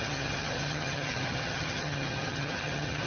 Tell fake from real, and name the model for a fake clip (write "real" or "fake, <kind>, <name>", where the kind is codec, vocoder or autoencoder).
fake, vocoder, HiFi-GAN